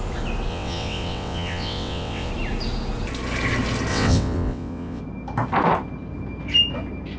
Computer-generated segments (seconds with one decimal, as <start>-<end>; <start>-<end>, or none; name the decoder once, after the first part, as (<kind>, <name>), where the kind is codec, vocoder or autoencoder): 0.5-2.3 (vocoder, WaveNeXt); 3.9-5.0